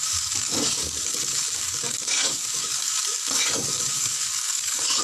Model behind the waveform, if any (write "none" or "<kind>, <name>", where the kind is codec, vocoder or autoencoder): codec, DAC